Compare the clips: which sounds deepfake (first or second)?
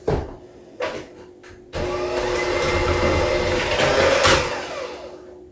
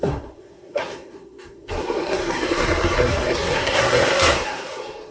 second